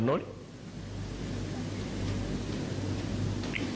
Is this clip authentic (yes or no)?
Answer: yes